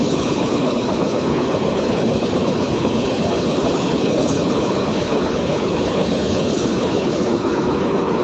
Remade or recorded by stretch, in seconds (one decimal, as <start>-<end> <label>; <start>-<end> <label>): 0.0-8.2 remade